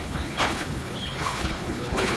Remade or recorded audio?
remade